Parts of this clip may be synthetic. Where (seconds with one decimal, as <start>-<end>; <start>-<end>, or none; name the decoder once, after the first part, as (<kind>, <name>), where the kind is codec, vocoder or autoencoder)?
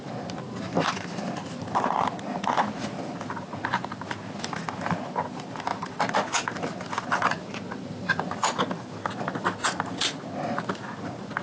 none